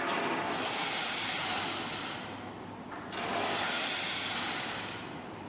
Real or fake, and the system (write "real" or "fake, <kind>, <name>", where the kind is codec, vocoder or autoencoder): real